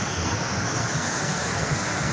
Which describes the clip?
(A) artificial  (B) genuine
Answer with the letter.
A